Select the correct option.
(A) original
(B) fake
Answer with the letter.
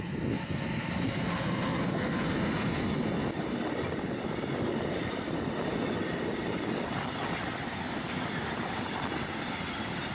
A